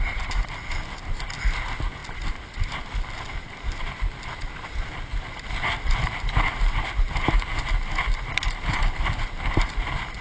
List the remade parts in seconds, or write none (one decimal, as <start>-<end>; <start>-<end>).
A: none